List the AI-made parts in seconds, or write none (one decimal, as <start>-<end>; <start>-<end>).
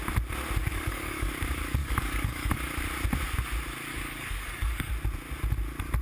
0.6-1.3; 1.8-2.5; 3.9-4.9